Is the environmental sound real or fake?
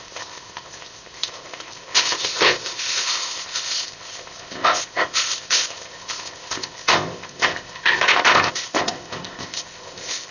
fake